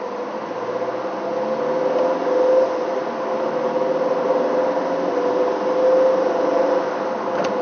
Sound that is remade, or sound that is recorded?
recorded